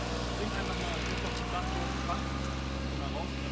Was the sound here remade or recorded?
recorded